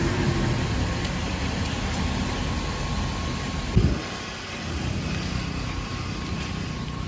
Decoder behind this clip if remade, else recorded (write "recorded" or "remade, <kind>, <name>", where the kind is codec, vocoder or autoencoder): recorded